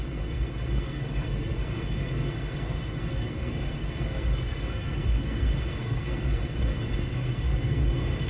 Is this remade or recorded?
remade